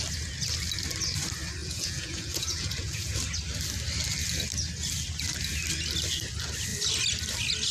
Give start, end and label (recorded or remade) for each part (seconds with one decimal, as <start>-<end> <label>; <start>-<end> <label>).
0.0-1.6 recorded; 1.6-3.2 remade; 3.2-7.7 recorded